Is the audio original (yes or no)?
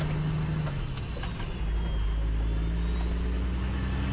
yes